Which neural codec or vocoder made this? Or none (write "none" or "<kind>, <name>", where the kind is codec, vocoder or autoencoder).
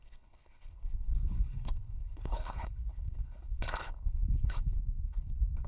codec, HILCodec